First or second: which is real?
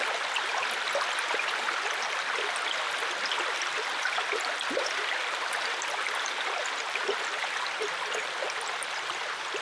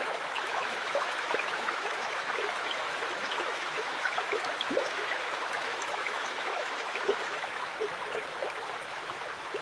first